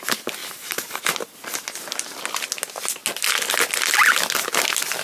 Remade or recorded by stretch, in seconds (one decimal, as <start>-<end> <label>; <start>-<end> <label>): 0.0-0.4 recorded; 0.4-1.0 remade; 1.0-5.0 recorded